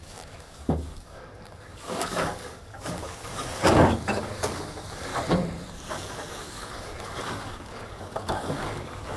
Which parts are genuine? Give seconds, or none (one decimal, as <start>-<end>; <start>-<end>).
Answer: 5.1-5.9